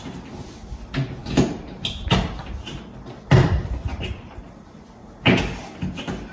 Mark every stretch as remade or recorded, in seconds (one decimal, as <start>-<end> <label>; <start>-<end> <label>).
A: 0.0-6.3 recorded